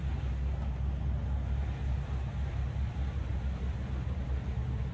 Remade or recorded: recorded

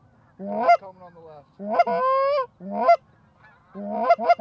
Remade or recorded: recorded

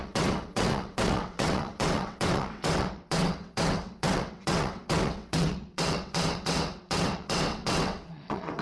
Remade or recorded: remade